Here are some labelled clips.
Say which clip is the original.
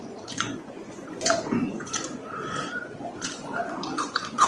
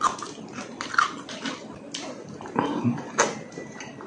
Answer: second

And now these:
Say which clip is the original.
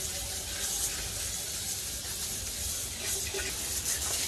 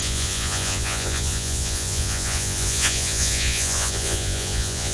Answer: first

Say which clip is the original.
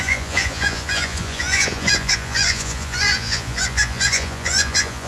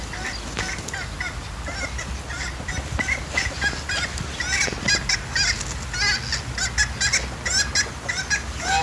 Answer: second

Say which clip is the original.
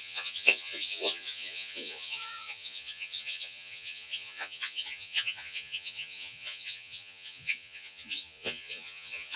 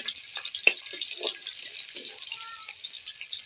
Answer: second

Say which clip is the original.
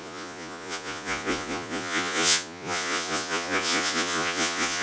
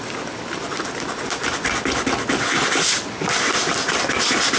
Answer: second